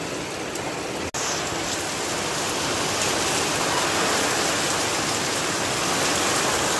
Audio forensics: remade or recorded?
recorded